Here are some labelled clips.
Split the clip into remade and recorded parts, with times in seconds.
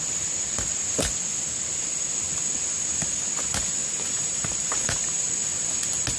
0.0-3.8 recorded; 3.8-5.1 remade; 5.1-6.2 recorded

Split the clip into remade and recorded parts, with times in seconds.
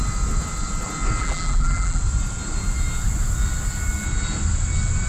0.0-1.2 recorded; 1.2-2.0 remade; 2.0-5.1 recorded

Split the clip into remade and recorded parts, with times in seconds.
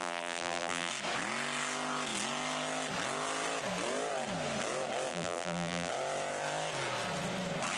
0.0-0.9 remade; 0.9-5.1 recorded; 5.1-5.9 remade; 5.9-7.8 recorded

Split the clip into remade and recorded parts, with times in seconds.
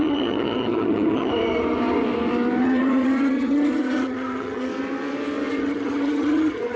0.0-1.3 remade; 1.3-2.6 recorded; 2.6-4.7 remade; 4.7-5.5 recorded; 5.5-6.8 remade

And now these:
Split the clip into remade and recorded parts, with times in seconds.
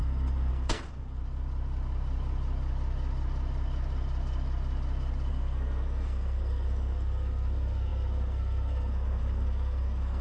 0.0-1.2 remade; 1.2-5.3 recorded; 5.3-10.2 remade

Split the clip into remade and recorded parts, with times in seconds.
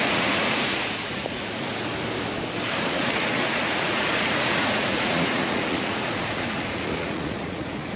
0.0-1.9 remade; 1.9-2.7 recorded; 2.7-8.0 remade